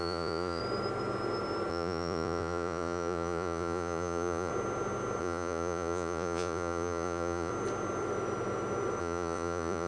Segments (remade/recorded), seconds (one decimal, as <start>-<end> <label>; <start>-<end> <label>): 0.0-0.6 remade; 0.6-1.7 recorded; 1.7-4.5 remade; 4.5-5.2 recorded; 5.2-7.5 remade; 7.5-9.0 recorded; 9.0-9.9 remade